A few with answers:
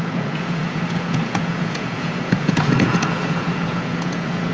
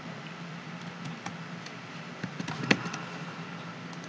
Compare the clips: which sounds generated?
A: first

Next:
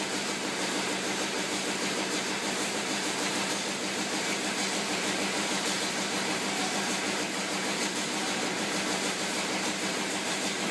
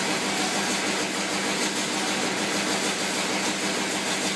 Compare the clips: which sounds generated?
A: first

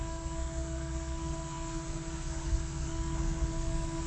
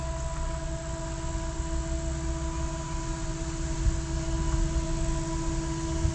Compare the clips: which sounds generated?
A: first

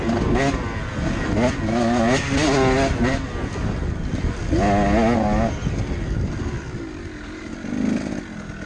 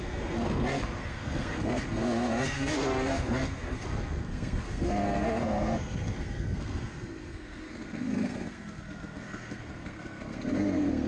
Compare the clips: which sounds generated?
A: second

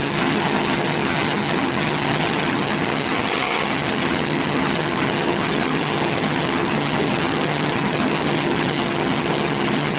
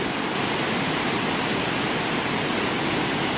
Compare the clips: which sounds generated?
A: first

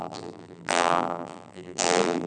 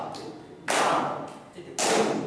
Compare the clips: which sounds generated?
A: first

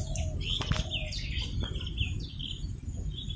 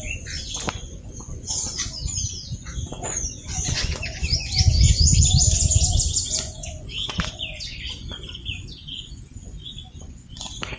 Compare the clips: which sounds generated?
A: second